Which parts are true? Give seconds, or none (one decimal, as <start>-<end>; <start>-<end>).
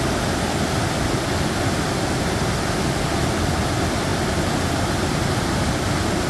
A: 0.0-6.3